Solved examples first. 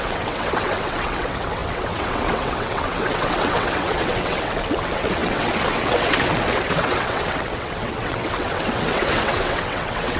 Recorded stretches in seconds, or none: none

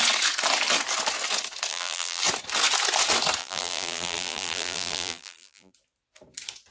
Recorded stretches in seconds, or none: 0.0-1.7; 2.2-3.4; 5.7-6.7

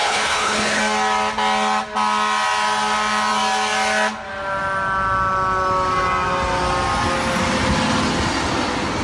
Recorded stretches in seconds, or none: 0.8-9.0

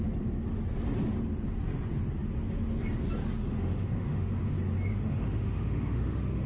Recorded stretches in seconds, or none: 0.0-3.4; 4.3-4.9

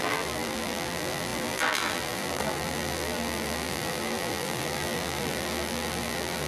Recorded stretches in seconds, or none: none

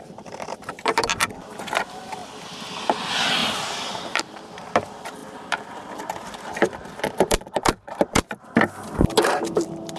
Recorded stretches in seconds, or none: 2.2-3.0